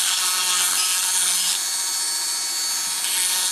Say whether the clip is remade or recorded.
recorded